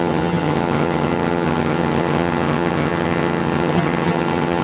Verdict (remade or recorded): remade